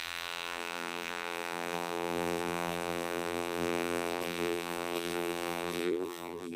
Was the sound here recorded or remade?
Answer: remade